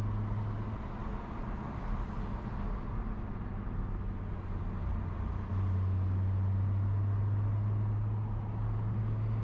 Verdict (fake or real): real